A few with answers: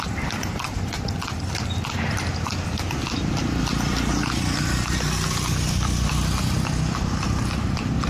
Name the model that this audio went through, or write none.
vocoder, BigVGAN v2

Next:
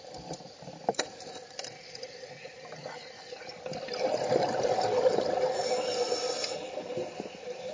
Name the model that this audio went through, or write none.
none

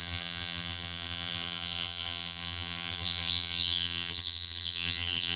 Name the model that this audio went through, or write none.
vocoder, BigVGAN v2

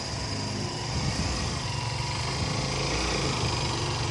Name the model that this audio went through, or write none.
vocoder, BigVGAN v2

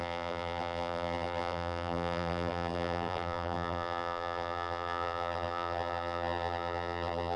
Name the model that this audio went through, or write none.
vocoder, BigVGAN v2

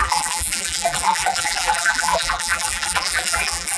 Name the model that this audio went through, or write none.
vocoder, BigVGAN v2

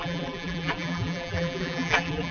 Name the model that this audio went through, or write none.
vocoder, BigVGAN v2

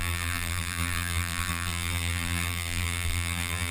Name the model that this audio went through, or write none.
vocoder, BigVGAN v2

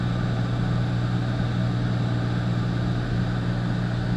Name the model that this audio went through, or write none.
none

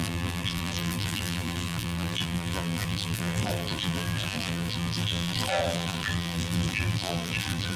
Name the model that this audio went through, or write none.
vocoder, BigVGAN v2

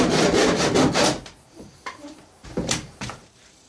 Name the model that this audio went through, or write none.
vocoder, BigVGAN v2